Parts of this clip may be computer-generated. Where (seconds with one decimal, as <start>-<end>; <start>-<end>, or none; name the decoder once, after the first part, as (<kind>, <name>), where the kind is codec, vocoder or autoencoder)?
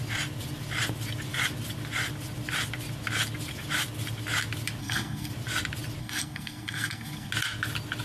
4.8-5.3 (codec, SNAC); 6.0-7.3